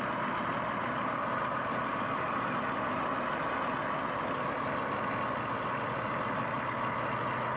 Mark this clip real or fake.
real